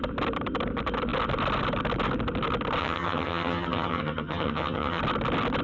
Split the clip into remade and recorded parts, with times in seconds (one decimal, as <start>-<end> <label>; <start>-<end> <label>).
0.0-2.8 recorded; 2.8-5.0 remade; 5.0-5.6 recorded